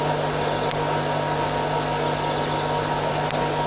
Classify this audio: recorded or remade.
recorded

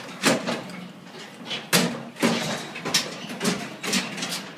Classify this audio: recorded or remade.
recorded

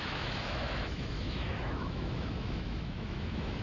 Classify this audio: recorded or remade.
remade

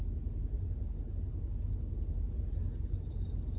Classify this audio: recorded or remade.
recorded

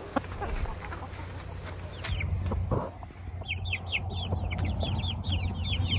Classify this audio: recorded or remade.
recorded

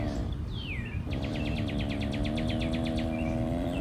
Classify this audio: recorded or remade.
recorded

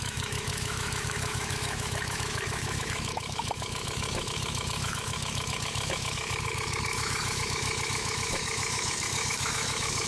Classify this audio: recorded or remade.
remade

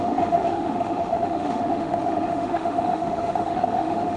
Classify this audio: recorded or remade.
remade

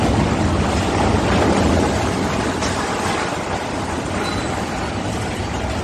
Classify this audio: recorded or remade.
recorded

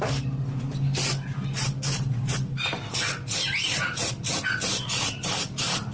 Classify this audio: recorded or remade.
recorded